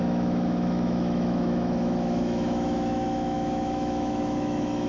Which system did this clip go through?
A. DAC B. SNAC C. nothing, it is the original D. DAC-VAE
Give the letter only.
D